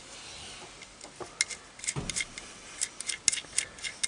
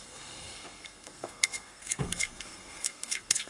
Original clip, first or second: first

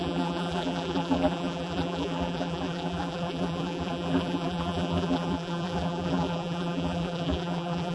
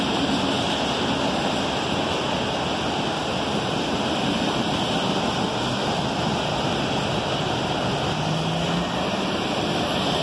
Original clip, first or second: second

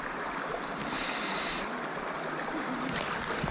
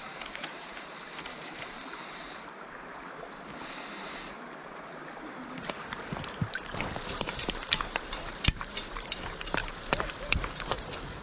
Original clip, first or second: first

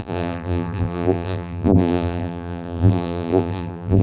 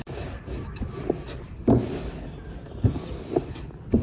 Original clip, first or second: second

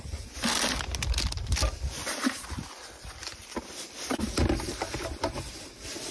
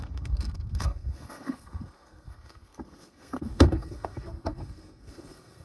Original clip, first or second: first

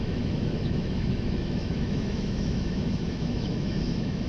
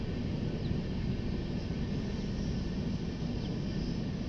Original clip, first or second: second